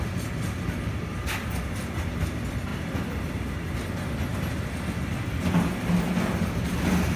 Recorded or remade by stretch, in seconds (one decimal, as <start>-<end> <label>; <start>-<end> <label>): 0.0-7.2 recorded